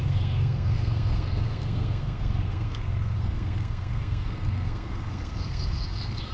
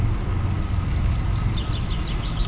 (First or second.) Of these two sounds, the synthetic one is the first